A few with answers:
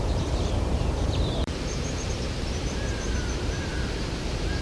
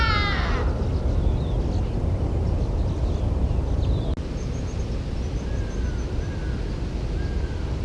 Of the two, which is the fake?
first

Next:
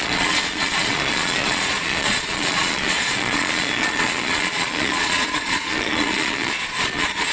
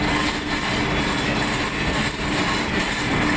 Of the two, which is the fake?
first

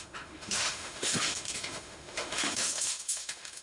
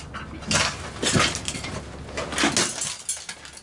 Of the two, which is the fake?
first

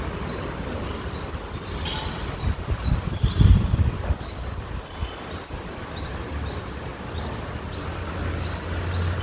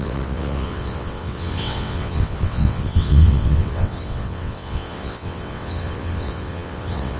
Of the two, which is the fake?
second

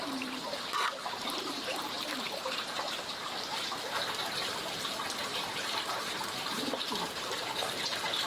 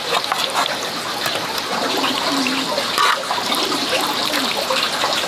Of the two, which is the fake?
first